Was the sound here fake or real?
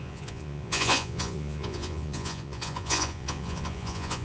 fake